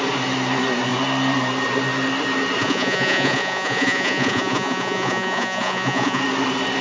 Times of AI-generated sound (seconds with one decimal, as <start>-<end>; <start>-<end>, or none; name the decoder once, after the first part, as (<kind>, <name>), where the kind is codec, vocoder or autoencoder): 2.6-6.2 (vocoder, Vocos)